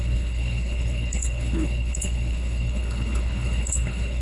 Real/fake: fake